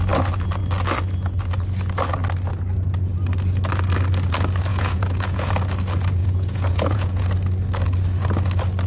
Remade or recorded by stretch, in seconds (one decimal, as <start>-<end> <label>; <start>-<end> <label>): 0.0-4.7 recorded; 4.7-5.5 remade; 5.5-6.2 recorded; 6.2-7.3 remade; 7.3-8.9 recorded